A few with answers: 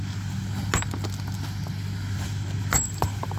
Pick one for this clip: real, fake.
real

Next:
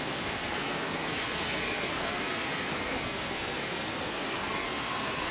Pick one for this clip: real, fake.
fake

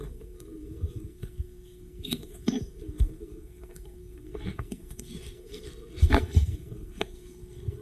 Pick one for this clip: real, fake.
fake